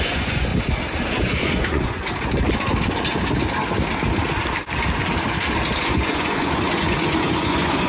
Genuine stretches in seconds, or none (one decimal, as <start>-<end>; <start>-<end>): 0.5-1.2; 2.0-5.8

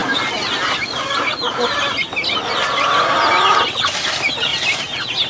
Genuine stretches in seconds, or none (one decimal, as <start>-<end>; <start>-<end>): 0.0-5.3

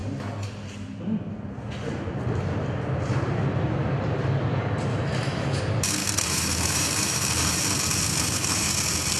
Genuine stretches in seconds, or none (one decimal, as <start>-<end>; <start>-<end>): 0.0-4.9; 5.6-6.0; 7.3-8.1; 8.7-9.2

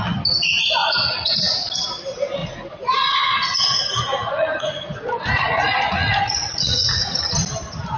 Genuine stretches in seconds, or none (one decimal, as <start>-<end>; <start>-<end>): 0.0-0.8; 1.5-2.4; 7.2-8.0

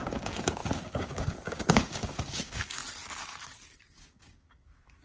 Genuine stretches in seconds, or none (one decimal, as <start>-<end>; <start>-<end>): 2.8-3.9

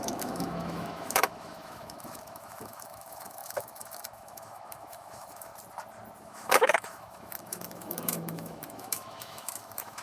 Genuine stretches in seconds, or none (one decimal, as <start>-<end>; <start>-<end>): 5.5-6.2

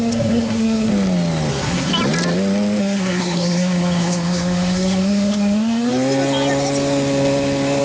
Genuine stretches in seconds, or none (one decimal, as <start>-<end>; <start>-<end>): 0.9-1.5; 1.9-2.8; 5.9-7.8